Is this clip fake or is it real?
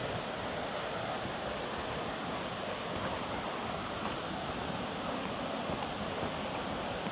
real